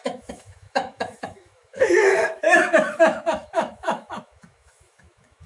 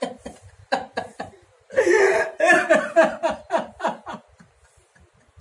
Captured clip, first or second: second